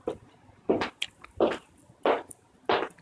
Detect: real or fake real